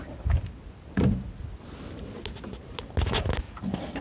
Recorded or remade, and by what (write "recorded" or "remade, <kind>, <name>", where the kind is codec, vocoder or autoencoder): recorded